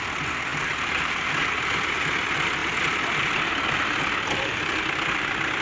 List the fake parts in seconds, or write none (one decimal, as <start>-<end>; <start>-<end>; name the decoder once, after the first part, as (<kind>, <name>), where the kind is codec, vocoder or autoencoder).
none